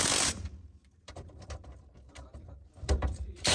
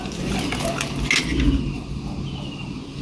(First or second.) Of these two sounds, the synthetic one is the first